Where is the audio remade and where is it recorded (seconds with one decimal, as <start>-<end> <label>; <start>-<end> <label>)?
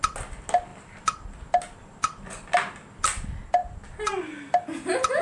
0.0-3.6 recorded; 3.6-4.5 remade; 4.5-5.2 recorded